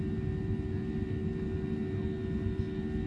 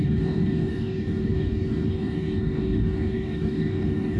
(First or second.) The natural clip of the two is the first